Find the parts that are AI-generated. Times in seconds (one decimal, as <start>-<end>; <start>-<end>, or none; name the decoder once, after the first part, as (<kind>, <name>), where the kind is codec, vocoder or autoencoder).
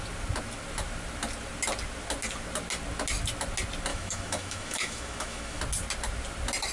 3.9-5.6 (autoencoder, DAC-VAE)